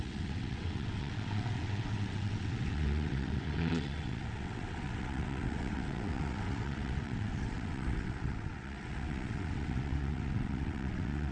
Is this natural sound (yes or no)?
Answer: no